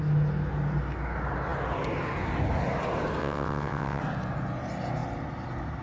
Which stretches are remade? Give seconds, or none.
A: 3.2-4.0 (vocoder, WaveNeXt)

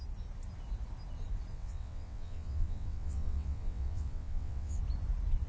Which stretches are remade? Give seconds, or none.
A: 1.5-4.8 (vocoder, WaveNeXt)

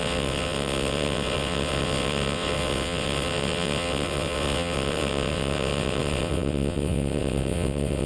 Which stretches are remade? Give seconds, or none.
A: 0.0-8.1 (vocoder, WaveNeXt)